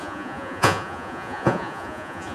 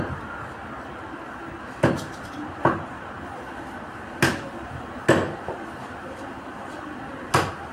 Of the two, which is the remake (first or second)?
first